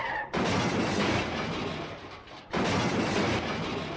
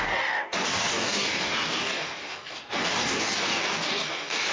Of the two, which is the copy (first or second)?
second